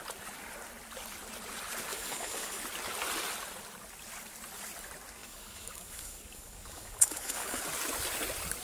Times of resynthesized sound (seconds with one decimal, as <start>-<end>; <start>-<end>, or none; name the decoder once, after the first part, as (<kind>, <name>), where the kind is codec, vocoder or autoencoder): 1.9-2.6 (codec, DAC); 5.2-7.6